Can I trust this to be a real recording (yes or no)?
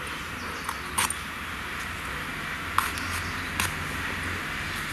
yes